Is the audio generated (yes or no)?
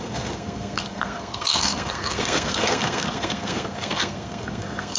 yes